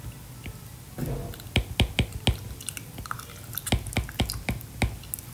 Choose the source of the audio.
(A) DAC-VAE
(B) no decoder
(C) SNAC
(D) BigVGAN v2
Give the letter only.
B